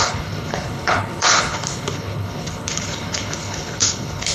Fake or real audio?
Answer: fake